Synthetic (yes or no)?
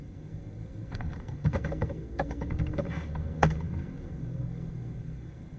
yes